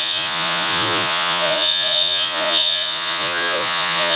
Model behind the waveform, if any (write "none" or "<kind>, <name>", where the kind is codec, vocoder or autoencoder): vocoder, Vocos